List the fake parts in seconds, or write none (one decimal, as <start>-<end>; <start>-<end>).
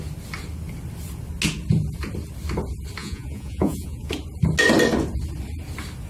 3.0-4.1